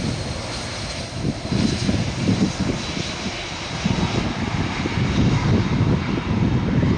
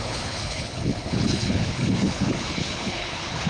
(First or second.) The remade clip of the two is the second